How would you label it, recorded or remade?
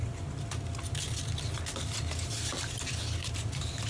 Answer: recorded